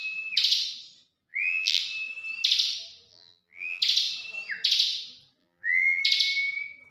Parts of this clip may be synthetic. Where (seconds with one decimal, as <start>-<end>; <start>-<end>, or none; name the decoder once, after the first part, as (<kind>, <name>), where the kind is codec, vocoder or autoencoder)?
1.3-1.8 (vocoder, BigVGAN v2); 3.1-3.8; 5.4-6.0